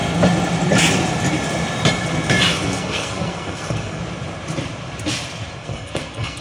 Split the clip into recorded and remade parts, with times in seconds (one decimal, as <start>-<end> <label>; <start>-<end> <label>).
0.0-2.5 recorded; 2.5-4.0 remade; 4.0-5.6 recorded; 5.6-6.4 remade